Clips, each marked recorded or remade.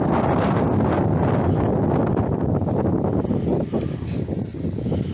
recorded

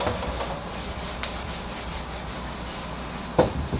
recorded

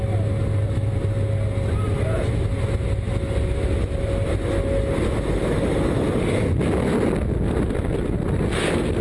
recorded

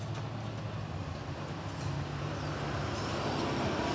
recorded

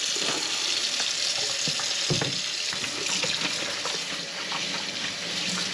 recorded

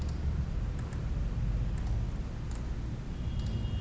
recorded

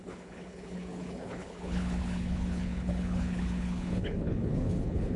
remade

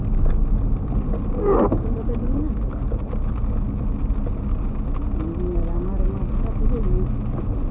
recorded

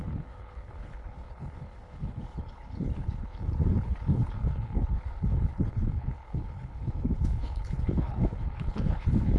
remade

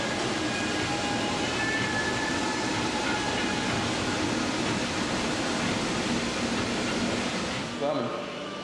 recorded